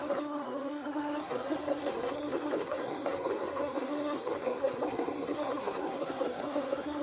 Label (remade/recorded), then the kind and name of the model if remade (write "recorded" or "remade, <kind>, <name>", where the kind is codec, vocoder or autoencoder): remade, codec, SNAC